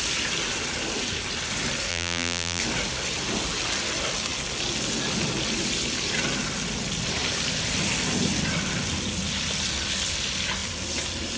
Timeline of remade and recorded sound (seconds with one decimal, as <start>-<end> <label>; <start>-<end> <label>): 0.0-1.9 recorded; 1.9-2.6 remade; 2.6-11.4 recorded